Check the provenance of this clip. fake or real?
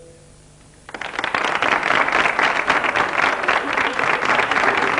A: real